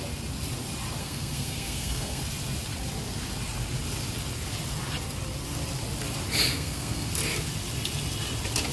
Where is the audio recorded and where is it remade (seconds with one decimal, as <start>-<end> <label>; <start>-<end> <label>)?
0.0-1.0 recorded; 1.0-2.2 remade; 2.2-6.5 recorded; 6.5-7.1 remade; 7.1-8.7 recorded